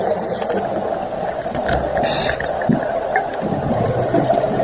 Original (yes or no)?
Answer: yes